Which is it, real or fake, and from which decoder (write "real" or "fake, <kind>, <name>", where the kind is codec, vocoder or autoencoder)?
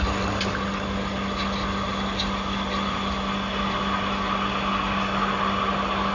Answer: real